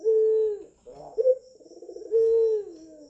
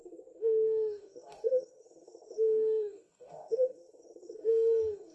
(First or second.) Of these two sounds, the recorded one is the first